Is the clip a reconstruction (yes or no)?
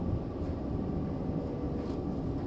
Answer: no